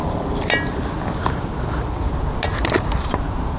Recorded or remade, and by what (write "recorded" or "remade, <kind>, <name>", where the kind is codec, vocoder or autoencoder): recorded